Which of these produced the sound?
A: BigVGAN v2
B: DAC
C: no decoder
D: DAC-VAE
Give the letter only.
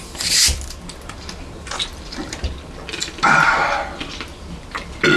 C